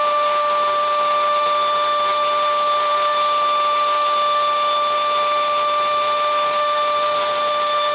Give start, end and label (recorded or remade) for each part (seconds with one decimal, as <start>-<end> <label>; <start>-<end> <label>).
0.0-7.9 remade